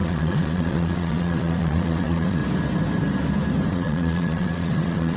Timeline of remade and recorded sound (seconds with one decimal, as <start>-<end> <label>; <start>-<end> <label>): 0.0-2.4 remade; 2.4-3.7 recorded; 3.7-5.2 remade